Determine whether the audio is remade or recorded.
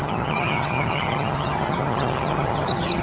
remade